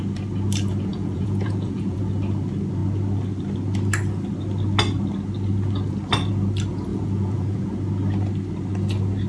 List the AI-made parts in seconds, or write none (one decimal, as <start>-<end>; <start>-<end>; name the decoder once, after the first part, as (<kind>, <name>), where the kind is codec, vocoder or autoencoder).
0.9-2.0 (vocoder, Vocos); 6.9-7.7